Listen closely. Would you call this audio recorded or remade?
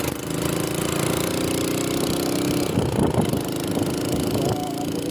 recorded